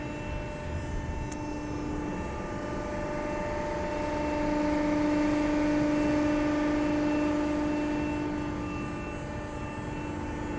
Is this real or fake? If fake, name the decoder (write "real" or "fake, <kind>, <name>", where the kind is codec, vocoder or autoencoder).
real